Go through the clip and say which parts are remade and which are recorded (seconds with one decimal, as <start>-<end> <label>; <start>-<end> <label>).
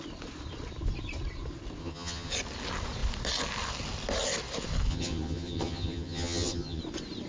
0.0-1.8 recorded; 1.8-2.3 remade; 2.3-4.9 recorded; 4.9-6.8 remade; 6.8-7.3 recorded